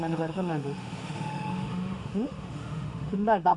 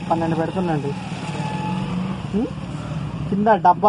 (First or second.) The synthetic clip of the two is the first